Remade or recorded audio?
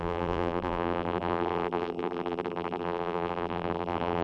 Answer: remade